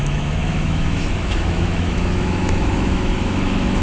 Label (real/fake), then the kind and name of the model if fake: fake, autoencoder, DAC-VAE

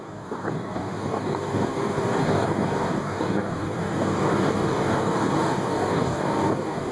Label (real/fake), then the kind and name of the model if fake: fake, codec, DAC